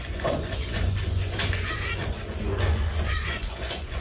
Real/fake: fake